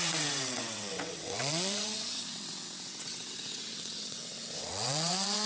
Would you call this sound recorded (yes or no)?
no